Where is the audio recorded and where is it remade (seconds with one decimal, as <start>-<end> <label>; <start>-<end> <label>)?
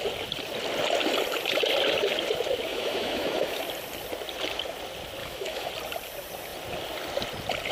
0.0-2.7 recorded; 2.7-3.6 remade; 3.6-5.2 recorded; 5.2-5.7 remade; 5.7-7.7 recorded